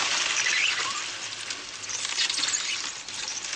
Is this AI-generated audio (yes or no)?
no